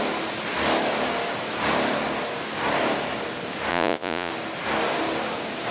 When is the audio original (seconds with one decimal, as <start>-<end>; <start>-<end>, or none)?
0.0-3.7; 4.3-5.7